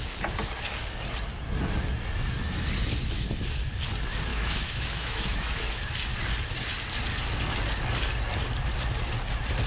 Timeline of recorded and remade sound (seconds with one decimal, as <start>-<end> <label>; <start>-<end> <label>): 0.0-4.3 recorded; 4.3-5.8 remade; 5.8-9.7 recorded